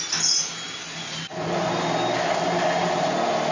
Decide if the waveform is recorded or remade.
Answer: recorded